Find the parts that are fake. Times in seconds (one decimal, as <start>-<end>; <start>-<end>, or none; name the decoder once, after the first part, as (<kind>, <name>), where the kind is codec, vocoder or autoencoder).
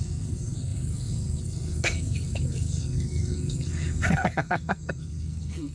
0.0-5.7 (codec, SNAC)